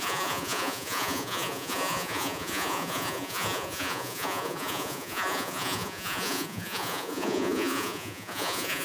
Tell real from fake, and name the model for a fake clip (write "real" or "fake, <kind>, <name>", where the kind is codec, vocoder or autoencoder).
fake, vocoder, Vocos